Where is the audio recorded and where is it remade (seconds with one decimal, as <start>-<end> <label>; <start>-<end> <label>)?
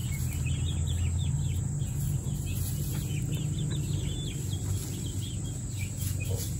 0.0-6.6 recorded